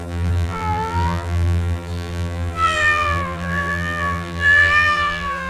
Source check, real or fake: fake